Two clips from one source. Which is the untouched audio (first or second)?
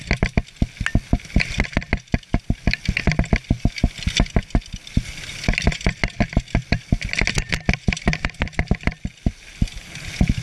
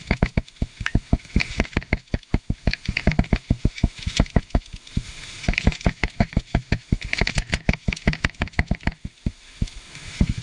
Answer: first